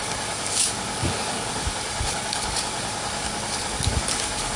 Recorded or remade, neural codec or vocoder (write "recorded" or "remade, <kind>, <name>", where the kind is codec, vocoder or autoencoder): remade, codec, DAC